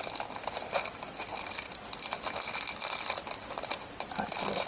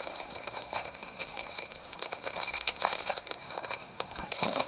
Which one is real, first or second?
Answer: first